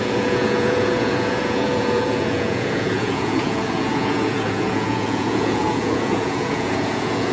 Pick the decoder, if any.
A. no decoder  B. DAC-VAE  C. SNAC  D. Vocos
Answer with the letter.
D